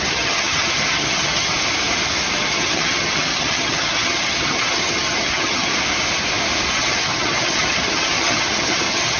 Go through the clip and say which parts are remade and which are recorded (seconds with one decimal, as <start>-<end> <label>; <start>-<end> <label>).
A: 0.0-1.5 remade; 1.5-2.4 recorded; 2.4-5.7 remade; 5.7-6.7 recorded; 6.7-9.2 remade